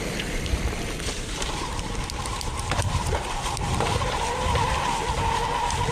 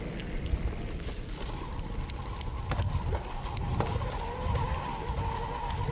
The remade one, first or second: first